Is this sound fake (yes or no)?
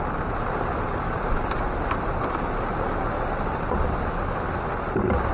no